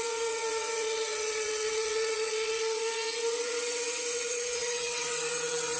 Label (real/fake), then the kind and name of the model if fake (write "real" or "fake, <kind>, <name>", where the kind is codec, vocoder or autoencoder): fake, vocoder, WaveNeXt